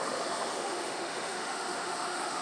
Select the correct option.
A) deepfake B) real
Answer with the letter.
A